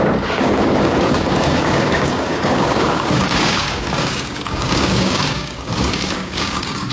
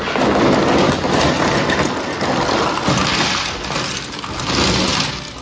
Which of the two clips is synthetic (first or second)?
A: first